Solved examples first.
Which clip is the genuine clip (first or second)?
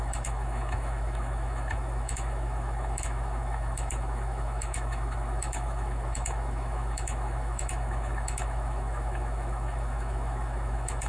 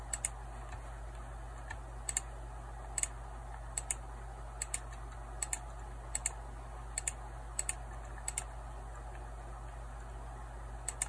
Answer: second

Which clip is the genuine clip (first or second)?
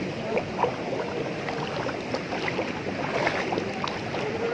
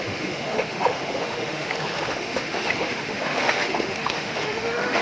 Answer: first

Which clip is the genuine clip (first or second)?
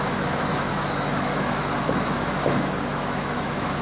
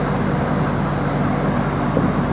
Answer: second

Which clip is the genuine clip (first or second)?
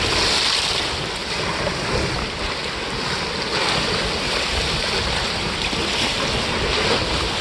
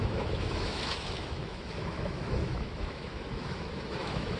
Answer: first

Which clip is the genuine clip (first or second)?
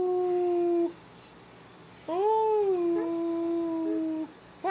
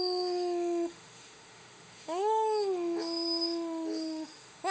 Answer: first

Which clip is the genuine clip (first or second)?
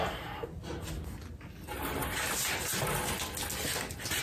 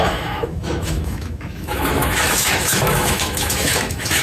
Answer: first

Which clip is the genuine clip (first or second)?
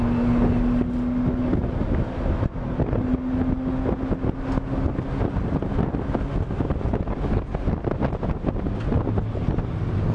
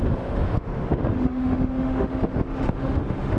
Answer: first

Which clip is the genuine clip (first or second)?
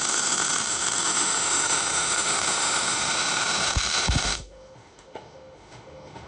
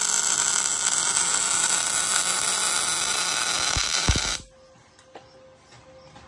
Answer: second